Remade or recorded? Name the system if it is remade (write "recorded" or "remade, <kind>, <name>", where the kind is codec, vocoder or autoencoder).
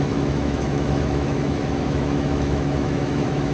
remade, autoencoder, DAC-VAE